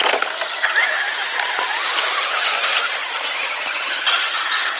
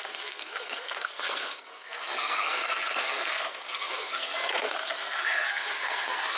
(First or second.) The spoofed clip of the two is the second